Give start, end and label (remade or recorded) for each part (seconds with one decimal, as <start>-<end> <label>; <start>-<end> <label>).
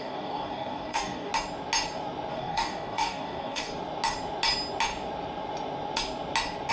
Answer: 0.0-1.3 remade; 1.3-2.3 recorded; 2.3-3.7 remade; 3.7-6.7 recorded